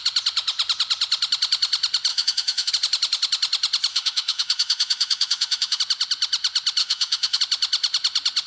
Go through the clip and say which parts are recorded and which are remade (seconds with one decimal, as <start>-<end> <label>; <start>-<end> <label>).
0.0-2.1 recorded; 2.1-2.7 remade; 2.7-3.9 recorded; 3.9-5.8 remade; 5.8-6.8 recorded; 6.8-7.4 remade; 7.4-8.5 recorded